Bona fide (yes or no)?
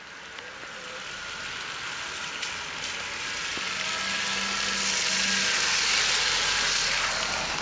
yes